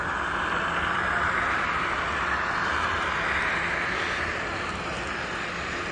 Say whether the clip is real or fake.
real